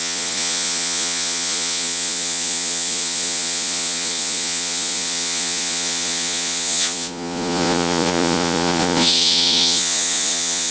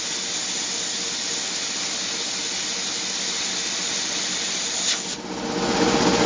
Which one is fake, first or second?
first